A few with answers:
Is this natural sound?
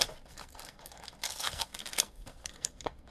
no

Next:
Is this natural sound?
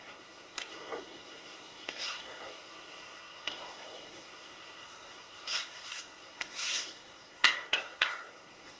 no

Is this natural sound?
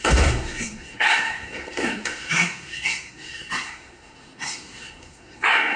no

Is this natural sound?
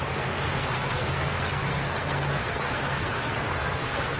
no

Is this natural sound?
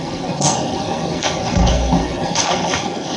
no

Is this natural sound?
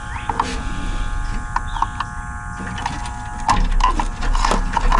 yes